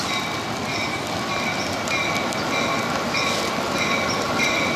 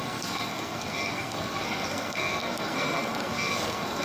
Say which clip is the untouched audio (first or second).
first